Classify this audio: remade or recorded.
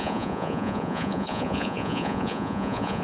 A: remade